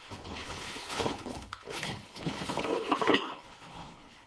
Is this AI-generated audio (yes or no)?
yes